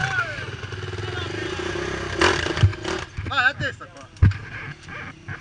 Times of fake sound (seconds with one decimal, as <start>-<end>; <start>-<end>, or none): 0.0-0.7